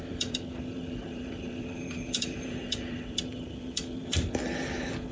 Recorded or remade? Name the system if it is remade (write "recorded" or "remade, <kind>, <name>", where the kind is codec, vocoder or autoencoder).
remade, vocoder, BigVGAN v2